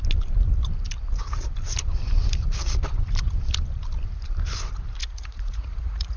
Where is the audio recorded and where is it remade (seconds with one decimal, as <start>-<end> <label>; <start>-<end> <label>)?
0.0-5.0 recorded; 5.0-6.2 remade